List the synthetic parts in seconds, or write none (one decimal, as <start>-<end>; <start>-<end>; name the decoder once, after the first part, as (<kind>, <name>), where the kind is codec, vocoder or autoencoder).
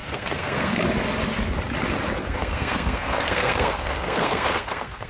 0.0-0.8 (codec, SNAC); 2.2-5.1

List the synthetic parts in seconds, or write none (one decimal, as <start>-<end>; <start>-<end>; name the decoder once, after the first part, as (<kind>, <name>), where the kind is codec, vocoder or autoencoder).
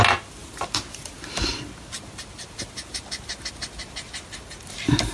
none